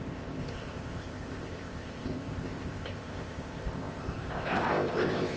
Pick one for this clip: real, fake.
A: fake